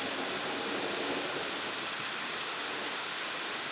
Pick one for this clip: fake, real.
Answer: real